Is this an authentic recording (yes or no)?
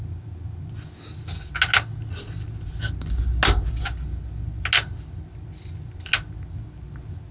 yes